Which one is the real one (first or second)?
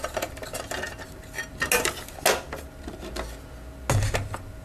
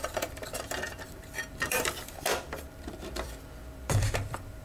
first